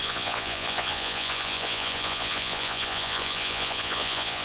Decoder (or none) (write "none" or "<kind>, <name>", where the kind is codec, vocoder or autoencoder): vocoder, Vocos